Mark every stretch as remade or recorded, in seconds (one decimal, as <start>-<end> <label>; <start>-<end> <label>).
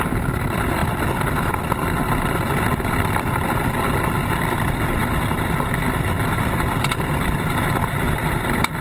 0.0-8.8 remade